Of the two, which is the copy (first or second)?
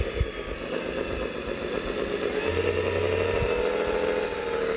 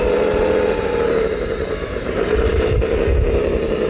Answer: second